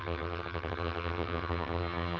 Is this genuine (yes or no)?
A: no